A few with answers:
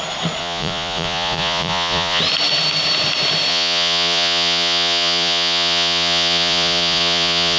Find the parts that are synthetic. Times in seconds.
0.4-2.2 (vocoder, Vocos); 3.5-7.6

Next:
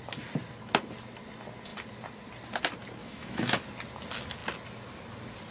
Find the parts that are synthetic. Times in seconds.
3.0-3.6 (autoencoder, DAC-VAE)